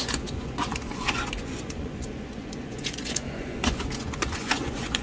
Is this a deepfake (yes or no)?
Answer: yes